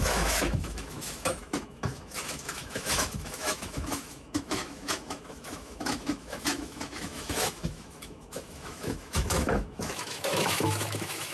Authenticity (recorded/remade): remade